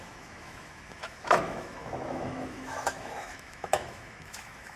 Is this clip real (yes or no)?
no